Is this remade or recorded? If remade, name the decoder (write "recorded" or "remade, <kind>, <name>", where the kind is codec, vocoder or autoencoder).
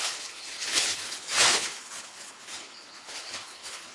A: remade, codec, HILCodec